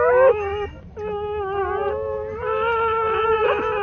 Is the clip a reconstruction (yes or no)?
no